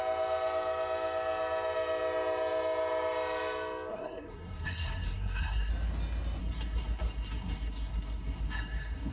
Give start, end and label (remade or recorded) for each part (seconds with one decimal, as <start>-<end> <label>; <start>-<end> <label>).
0.0-3.9 recorded; 3.9-5.7 remade; 5.7-6.4 recorded; 6.4-9.1 remade